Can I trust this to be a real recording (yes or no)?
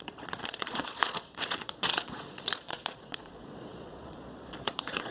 no